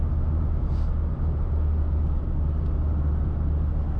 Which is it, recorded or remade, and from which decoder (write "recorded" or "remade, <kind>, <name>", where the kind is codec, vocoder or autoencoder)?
recorded